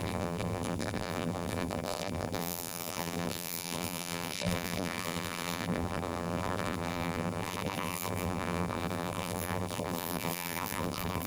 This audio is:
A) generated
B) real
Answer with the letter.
A